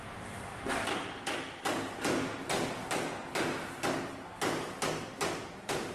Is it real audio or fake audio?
real